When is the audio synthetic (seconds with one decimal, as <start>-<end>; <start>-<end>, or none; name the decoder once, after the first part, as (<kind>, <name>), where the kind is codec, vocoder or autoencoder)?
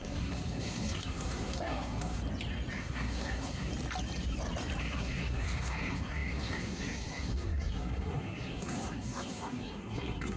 0.0-2.2 (codec, SNAC); 2.8-3.7; 4.8-10.4